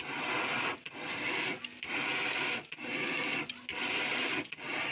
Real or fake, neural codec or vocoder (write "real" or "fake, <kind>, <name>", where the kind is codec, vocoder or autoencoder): fake, vocoder, BigVGAN v2